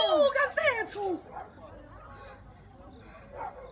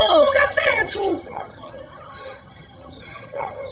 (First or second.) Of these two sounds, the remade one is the second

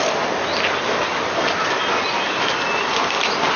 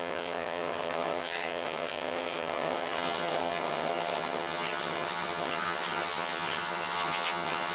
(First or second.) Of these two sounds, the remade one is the second